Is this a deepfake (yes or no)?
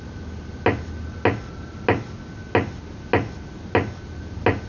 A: no